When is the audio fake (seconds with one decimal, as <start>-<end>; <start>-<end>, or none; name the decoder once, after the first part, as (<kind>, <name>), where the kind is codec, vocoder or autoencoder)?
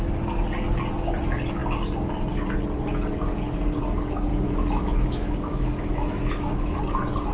4.3-6.8 (autoencoder, DAC-VAE)